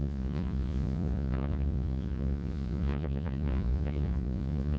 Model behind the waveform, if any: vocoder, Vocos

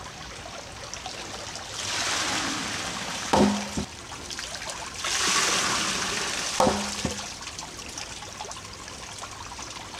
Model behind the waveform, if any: none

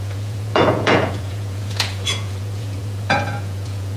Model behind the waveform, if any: vocoder, Vocos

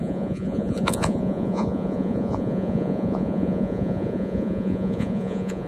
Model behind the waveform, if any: vocoder, Vocos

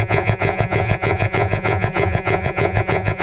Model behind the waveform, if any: vocoder, Vocos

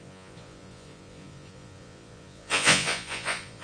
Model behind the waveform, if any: vocoder, Vocos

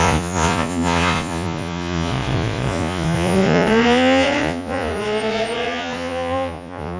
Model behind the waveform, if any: vocoder, Vocos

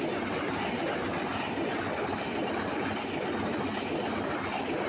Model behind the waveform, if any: none